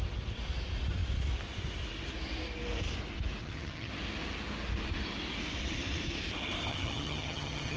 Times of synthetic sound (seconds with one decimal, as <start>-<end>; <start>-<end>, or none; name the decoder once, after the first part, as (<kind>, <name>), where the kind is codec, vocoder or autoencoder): 3.4-3.9 (vocoder, HiFi-GAN); 6.7-7.8